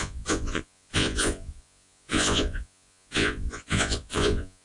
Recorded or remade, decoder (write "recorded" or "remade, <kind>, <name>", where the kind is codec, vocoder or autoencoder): remade, vocoder, Vocos